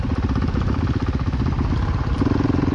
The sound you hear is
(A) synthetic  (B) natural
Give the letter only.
B